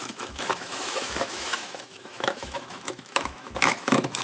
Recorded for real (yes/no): no